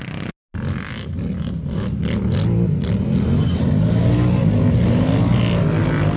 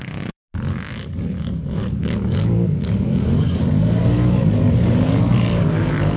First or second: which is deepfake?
second